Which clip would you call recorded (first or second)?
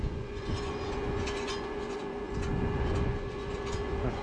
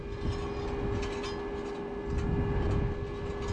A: second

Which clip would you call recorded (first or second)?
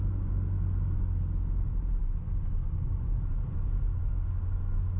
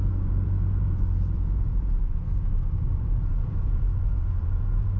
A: first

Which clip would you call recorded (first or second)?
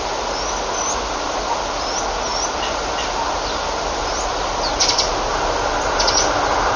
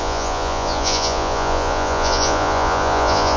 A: first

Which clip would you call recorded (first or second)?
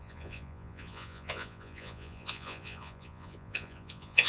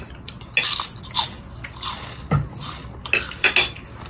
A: second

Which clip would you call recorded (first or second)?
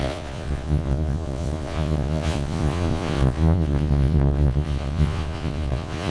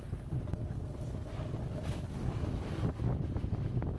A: second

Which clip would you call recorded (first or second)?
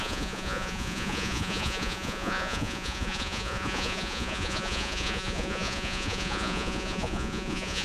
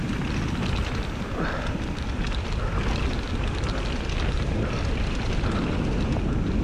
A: second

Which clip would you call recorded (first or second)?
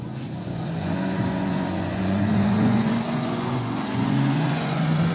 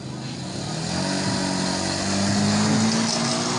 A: second